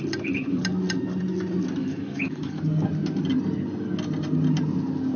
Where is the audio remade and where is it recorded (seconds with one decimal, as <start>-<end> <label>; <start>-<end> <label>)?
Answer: 0.0-1.8 recorded; 1.8-2.6 remade; 2.6-5.2 recorded